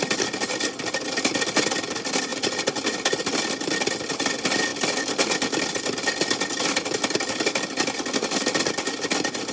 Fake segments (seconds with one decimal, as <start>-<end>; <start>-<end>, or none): none